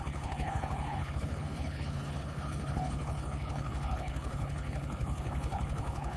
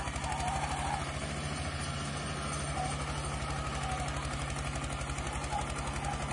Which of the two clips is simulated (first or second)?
first